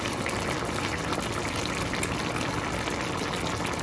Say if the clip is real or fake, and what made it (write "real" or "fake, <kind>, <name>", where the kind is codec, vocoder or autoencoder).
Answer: real